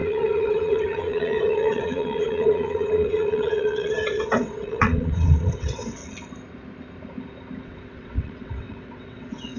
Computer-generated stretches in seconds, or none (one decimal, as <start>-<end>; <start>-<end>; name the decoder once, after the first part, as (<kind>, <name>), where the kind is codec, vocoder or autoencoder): 0.0-6.0 (vocoder, WaveNeXt); 7.6-9.6